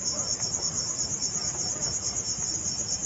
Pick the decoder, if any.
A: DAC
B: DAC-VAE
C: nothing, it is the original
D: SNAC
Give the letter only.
C